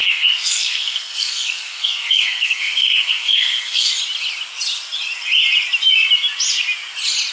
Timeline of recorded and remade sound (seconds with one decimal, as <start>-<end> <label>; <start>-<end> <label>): 0.0-3.9 remade; 3.9-7.3 recorded